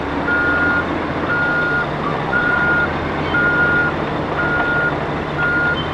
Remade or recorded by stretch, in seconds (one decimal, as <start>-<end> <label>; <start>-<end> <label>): 0.0-2.1 recorded; 2.1-2.6 remade; 2.6-5.9 recorded

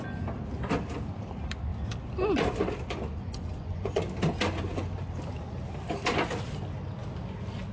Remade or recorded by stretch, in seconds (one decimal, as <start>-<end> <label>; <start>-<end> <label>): 0.0-3.2 recorded; 3.2-4.0 remade; 4.0-7.7 recorded

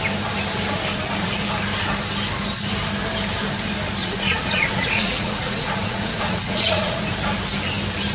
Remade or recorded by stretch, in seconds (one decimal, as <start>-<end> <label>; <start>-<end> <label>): 0.0-4.0 recorded; 4.0-7.0 remade; 7.0-8.1 recorded

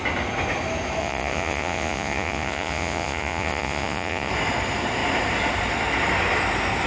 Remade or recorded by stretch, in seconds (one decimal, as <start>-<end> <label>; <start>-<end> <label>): 0.0-1.0 recorded; 1.0-4.3 remade; 4.3-6.9 recorded

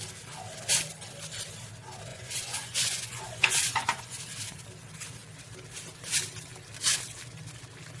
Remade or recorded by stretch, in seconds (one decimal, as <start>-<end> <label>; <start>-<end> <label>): 0.0-2.1 recorded; 2.1-4.2 remade; 4.2-8.0 recorded

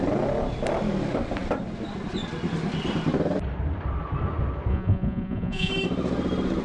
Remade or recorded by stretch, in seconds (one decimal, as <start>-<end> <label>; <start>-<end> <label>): 0.0-4.7 recorded; 4.7-5.7 remade; 5.7-6.6 recorded

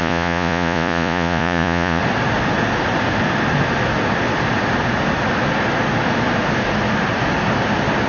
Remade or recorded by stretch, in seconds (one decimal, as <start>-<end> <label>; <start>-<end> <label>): 0.0-2.0 remade; 2.0-8.1 recorded

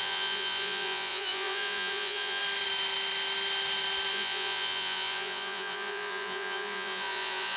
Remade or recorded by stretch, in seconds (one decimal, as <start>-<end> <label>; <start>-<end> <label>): 0.0-2.4 remade; 2.4-4.1 recorded; 4.1-7.6 remade